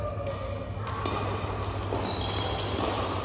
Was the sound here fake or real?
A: real